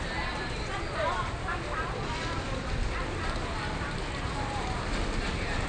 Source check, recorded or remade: recorded